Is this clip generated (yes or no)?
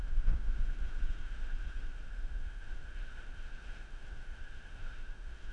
yes